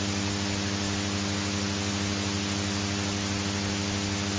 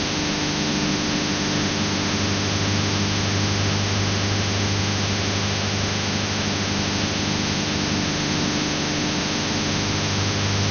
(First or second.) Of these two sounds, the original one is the first